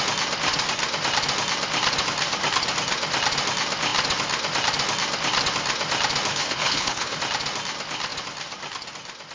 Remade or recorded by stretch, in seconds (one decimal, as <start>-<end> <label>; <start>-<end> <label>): 0.0-6.3 recorded; 6.3-7.2 remade; 7.2-9.3 recorded